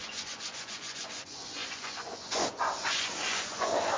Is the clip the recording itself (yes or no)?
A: no